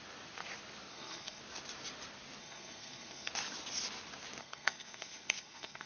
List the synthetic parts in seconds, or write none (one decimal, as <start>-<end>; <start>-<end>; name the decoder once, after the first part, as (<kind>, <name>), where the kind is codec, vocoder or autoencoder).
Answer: 0.9-1.4 (codec, SNAC); 2.4-3.3; 4.4-5.9